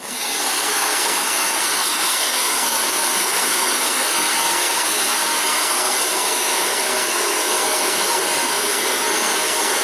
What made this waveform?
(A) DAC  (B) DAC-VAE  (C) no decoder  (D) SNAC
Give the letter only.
D